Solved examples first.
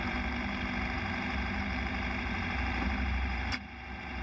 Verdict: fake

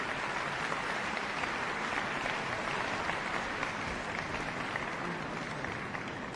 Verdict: real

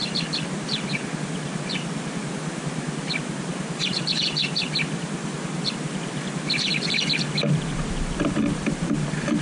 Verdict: fake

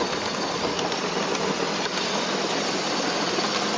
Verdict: real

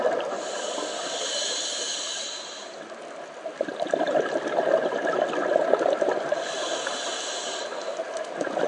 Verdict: real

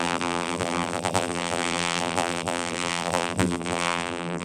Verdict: fake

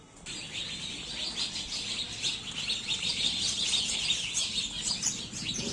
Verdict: real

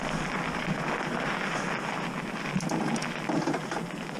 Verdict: real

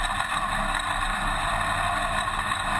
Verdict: real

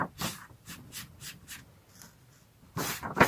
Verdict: fake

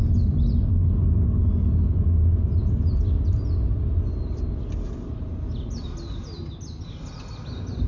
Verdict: real